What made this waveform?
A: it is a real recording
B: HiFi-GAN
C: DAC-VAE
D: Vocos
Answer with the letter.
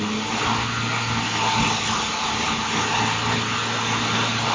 A